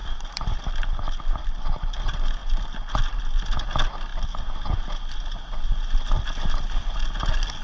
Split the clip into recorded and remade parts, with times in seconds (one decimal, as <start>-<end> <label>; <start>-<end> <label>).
0.0-0.6 remade; 0.6-7.6 recorded